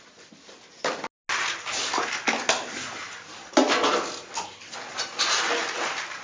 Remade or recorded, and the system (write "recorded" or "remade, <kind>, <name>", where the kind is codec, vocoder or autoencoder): recorded